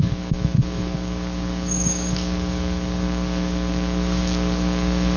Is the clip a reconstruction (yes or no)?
yes